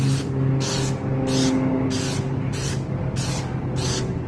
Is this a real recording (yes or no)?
yes